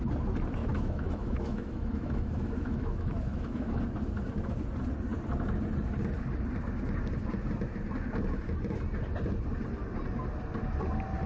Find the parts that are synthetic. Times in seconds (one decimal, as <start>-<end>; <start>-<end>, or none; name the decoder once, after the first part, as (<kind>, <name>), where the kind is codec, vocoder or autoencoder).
0.6-3.8 (autoencoder, DAC-VAE)